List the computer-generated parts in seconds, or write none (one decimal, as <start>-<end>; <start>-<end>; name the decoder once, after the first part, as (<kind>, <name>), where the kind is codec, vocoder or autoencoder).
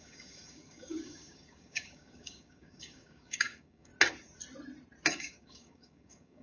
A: 0.0-3.9 (codec, DAC); 5.1-6.4